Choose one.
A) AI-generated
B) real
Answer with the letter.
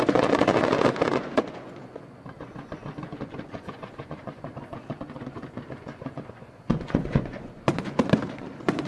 A